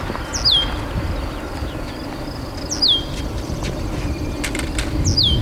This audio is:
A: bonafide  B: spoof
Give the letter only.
A